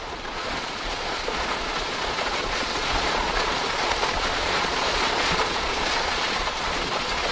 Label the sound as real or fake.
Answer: fake